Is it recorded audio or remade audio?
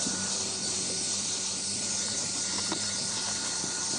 remade